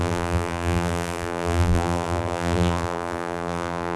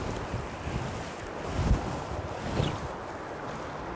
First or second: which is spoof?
first